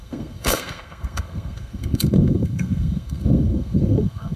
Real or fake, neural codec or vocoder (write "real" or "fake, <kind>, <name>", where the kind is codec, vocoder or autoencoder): fake, codec, SNAC